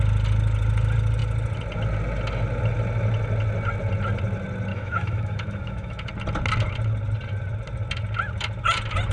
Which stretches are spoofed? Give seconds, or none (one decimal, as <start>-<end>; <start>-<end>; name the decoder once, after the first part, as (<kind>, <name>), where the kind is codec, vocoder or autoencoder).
4.7-6.1 (autoencoder, DAC-VAE)